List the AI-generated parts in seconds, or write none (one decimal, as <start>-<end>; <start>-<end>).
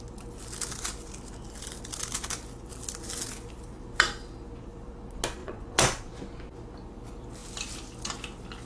5.4-6.1